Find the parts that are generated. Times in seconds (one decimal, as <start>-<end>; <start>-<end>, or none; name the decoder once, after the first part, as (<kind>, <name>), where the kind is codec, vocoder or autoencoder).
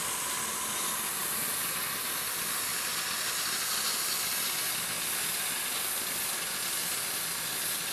none